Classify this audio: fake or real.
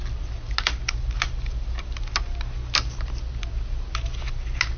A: real